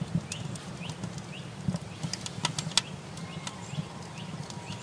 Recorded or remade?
recorded